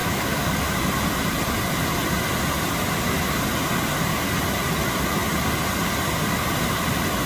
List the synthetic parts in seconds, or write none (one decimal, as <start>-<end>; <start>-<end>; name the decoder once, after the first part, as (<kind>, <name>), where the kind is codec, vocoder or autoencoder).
0.0-0.6 (codec, DAC)